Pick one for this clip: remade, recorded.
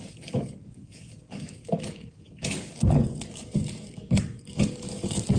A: remade